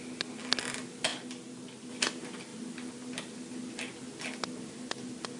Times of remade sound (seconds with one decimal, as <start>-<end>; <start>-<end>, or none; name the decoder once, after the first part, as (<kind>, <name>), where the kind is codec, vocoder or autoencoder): none